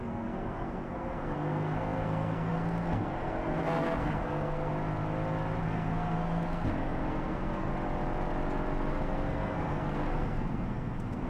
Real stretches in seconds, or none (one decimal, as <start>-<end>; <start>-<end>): 4.7-5.6; 7.7-8.9